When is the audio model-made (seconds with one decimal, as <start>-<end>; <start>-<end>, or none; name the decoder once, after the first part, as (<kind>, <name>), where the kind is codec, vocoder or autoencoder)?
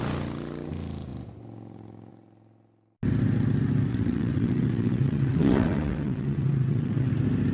3.9-7.1 (vocoder, WaveNeXt)